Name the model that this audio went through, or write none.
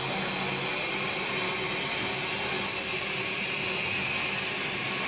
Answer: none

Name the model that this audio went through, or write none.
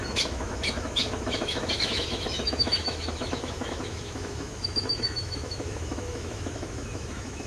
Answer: autoencoder, DAC-VAE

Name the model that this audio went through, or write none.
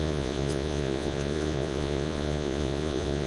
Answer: vocoder, Vocos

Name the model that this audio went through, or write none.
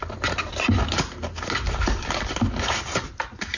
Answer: none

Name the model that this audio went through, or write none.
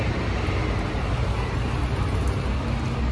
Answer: none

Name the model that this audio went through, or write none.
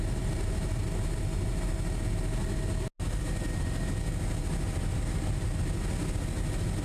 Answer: none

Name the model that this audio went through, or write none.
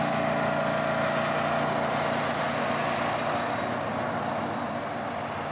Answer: none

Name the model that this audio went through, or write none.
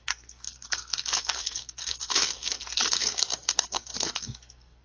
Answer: codec, SNAC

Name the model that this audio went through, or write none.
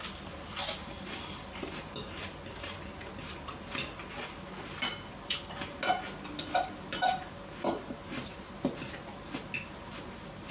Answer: none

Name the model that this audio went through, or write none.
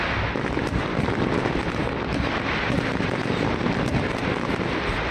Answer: none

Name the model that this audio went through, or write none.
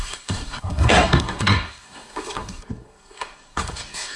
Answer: codec, SNAC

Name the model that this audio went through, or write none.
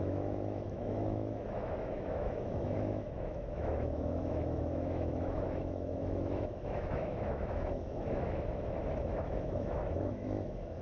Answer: autoencoder, DAC-VAE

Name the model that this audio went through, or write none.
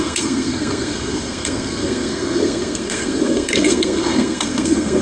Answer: codec, SNAC